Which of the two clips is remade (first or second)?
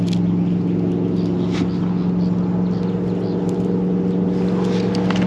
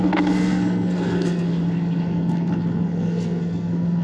second